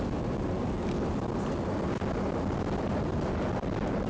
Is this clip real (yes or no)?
yes